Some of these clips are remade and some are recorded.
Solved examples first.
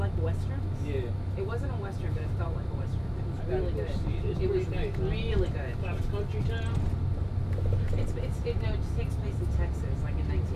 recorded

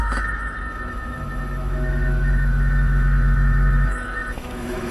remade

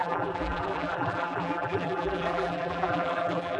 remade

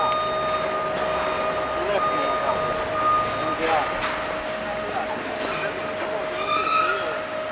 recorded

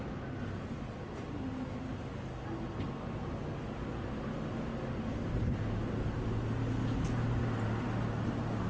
recorded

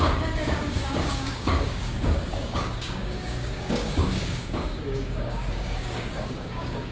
remade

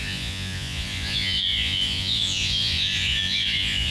remade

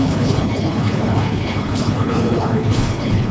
remade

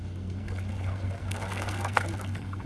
remade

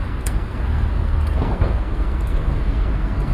remade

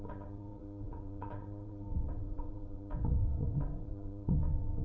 remade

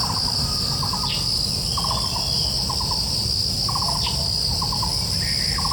recorded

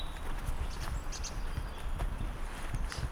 recorded